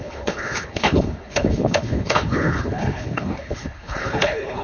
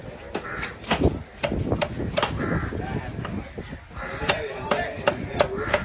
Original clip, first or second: second